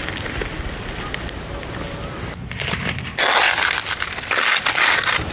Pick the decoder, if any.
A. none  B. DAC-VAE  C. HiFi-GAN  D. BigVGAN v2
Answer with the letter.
A